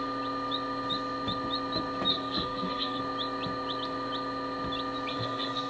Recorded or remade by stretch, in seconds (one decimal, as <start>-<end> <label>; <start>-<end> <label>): 0.0-2.1 recorded; 2.1-3.0 remade; 3.0-5.1 recorded; 5.1-5.7 remade